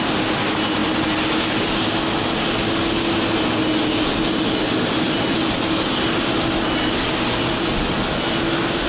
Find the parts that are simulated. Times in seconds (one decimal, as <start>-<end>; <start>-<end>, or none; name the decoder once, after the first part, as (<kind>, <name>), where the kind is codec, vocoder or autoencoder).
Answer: none